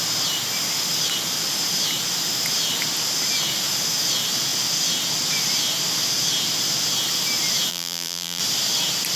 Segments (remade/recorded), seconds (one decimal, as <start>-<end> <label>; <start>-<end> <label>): 0.0-7.7 recorded; 7.7-8.4 remade; 8.4-9.2 recorded